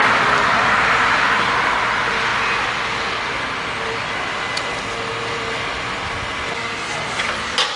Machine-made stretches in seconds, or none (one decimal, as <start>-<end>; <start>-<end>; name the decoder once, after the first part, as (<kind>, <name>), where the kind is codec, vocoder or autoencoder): none